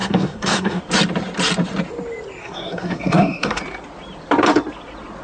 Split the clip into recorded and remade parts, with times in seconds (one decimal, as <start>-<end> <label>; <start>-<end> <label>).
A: 0.0-0.8 remade; 0.8-2.4 recorded; 2.4-3.6 remade; 3.6-5.2 recorded